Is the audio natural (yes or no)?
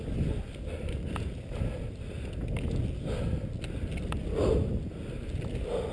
yes